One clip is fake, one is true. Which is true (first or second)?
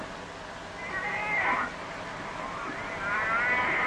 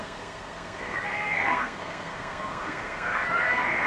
first